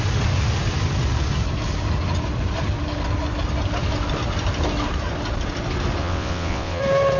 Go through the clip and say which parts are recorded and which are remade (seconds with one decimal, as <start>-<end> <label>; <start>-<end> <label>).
0.0-6.0 recorded; 6.0-6.8 remade; 6.8-7.2 recorded